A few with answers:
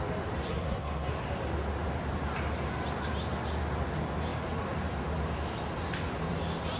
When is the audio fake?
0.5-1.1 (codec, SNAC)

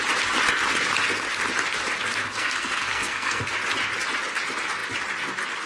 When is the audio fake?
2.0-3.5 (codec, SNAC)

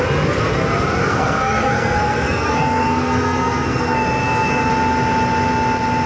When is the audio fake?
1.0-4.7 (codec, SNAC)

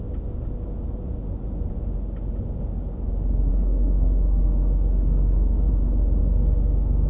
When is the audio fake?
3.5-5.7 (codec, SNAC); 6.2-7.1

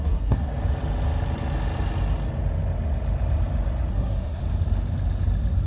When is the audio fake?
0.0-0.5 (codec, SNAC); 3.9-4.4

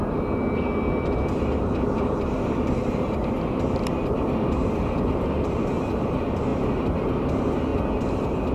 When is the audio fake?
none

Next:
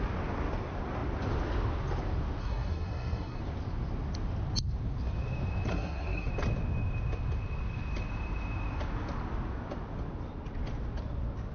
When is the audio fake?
2.4-3.4 (codec, SNAC); 5.7-6.3